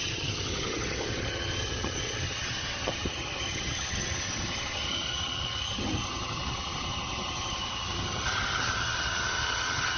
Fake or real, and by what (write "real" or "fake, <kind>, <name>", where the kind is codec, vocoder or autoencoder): fake, vocoder, HiFi-GAN